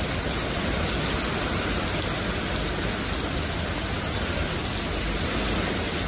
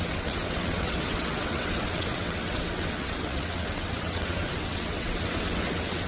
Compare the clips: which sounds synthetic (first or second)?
second